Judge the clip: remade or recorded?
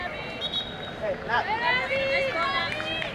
recorded